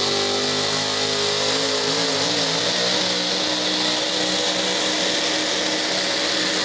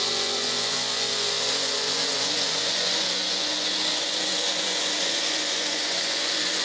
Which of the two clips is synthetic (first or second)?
second